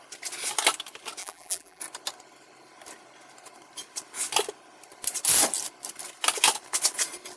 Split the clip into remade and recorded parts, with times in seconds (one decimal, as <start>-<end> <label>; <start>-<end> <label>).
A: 0.0-1.2 recorded; 1.2-1.8 remade; 1.8-7.4 recorded